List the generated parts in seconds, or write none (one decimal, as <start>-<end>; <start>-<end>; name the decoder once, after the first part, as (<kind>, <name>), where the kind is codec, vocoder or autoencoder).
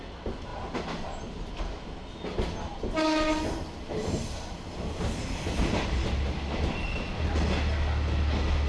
0.5-1.6 (vocoder, BigVGAN v2); 2.7-4.7; 5.6-6.1